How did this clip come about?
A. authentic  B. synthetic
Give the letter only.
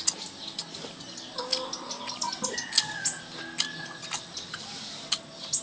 A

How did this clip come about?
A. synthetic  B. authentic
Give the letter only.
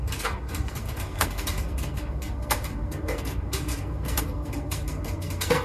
A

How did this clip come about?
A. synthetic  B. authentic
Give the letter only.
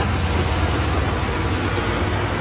B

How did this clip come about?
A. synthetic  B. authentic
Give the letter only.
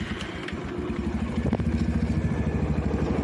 B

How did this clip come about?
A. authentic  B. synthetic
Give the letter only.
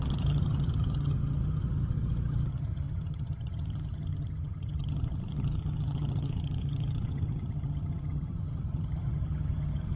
B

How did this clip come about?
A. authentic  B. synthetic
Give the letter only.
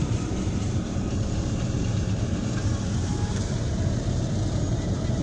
B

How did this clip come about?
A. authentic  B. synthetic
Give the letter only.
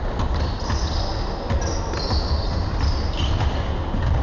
A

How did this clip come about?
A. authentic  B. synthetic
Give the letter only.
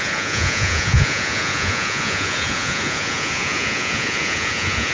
B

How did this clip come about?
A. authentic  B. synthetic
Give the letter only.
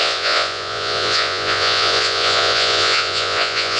B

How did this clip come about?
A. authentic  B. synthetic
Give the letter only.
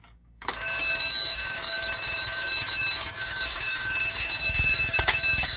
B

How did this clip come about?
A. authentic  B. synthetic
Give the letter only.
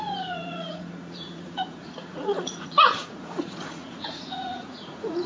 B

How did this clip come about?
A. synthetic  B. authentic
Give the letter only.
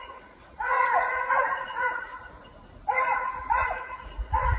A